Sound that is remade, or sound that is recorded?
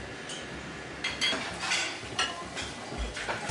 recorded